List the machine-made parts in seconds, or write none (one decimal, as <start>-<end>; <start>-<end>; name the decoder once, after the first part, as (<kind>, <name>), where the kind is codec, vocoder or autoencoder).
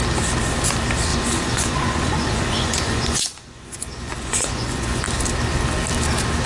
1.1-5.0 (vocoder, Vocos)